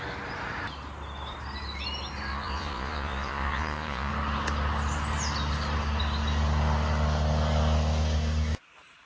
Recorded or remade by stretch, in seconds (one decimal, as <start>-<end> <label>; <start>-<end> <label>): 0.0-2.3 recorded; 2.3-4.1 remade; 4.1-9.1 recorded